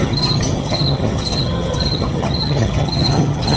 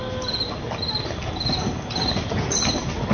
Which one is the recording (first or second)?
second